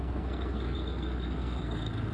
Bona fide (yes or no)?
no